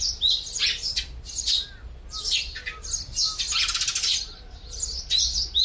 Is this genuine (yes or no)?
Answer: yes